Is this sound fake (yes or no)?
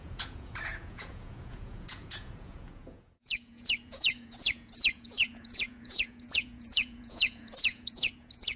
yes